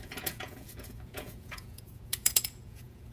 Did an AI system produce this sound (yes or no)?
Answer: yes